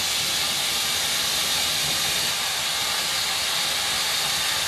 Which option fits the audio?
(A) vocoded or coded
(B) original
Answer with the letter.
B